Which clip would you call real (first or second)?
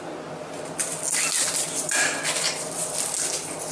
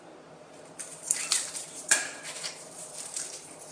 first